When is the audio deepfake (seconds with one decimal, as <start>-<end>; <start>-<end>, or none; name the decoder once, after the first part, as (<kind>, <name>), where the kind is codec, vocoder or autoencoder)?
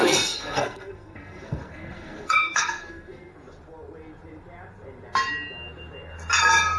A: 0.0-3.3 (codec, SNAC)